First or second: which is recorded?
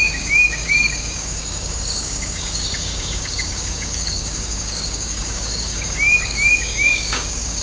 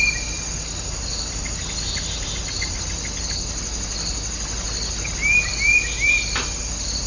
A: second